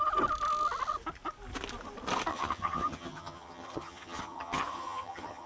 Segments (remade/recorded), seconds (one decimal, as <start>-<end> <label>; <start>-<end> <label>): 0.0-2.3 recorded; 2.3-5.5 remade